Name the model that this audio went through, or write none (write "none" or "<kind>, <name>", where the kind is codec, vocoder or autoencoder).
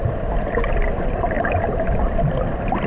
none